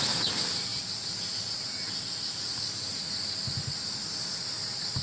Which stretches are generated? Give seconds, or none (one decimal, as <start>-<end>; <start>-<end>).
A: 0.7-1.2